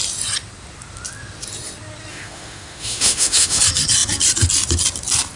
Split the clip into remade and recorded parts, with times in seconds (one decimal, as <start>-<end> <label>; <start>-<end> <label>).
0.0-2.1 recorded; 2.1-3.6 remade; 3.6-5.4 recorded